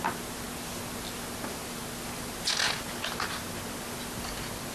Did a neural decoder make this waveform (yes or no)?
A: no